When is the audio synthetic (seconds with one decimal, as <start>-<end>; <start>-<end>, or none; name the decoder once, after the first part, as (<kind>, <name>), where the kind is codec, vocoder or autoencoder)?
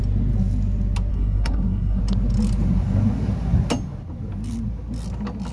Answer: 1.1-2.0 (codec, SNAC)